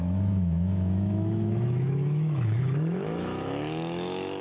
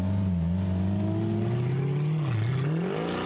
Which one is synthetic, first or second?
first